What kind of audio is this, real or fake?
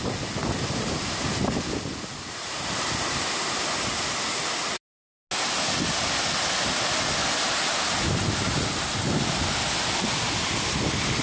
real